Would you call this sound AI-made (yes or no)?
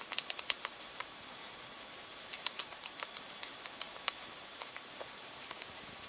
yes